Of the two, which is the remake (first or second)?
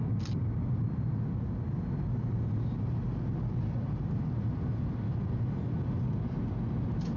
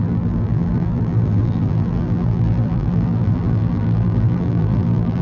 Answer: second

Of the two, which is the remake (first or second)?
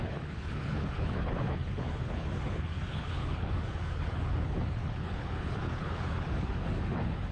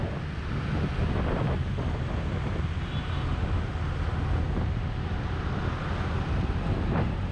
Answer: first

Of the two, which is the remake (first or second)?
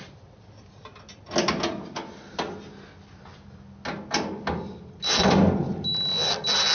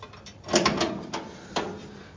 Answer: second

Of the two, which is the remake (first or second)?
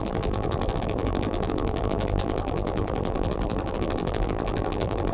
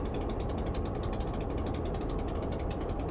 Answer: first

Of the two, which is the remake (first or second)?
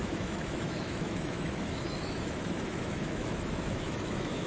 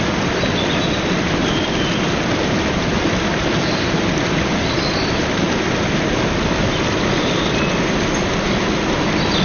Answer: first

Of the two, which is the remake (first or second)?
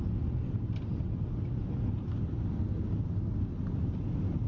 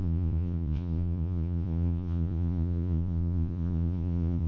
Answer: second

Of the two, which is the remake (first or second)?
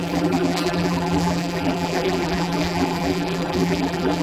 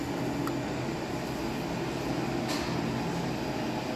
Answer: first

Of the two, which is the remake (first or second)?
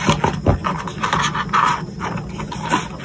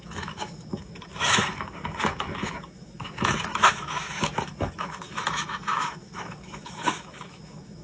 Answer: second